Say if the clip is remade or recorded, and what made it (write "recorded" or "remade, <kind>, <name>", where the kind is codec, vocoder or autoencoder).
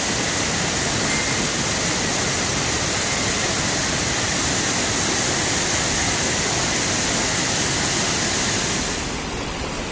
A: recorded